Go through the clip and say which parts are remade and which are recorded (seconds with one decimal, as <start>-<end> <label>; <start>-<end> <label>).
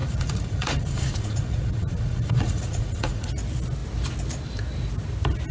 0.0-3.3 remade; 3.3-5.5 recorded